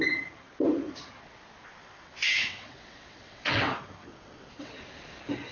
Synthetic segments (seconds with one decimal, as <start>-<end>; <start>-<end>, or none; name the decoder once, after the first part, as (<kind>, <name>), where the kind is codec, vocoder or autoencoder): 1.8-4.7 (vocoder, WaveNeXt)